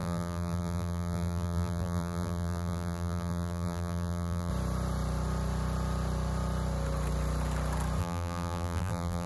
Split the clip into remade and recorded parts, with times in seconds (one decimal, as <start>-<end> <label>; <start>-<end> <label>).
0.0-4.5 remade; 4.5-8.0 recorded; 8.0-9.3 remade

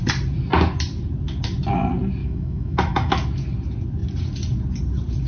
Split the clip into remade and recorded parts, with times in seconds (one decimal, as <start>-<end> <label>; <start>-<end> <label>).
0.0-2.2 recorded; 2.2-3.1 remade; 3.1-5.3 recorded

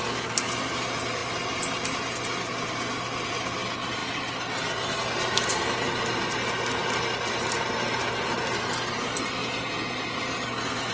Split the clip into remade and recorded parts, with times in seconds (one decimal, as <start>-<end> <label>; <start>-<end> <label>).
0.0-9.4 recorded; 9.4-10.2 remade; 10.2-10.9 recorded

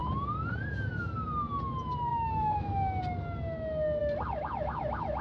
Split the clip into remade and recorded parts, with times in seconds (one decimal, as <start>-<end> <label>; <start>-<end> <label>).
0.0-2.1 recorded; 2.1-3.0 remade; 3.0-4.0 recorded; 4.0-5.2 remade

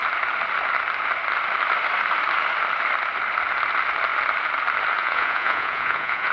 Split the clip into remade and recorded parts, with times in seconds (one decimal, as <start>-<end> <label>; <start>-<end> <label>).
0.0-5.0 recorded; 5.0-6.3 remade